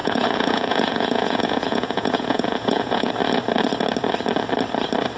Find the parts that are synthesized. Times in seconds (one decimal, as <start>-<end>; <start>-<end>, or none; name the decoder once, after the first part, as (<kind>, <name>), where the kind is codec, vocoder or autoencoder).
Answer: 0.0-3.1 (vocoder, Vocos)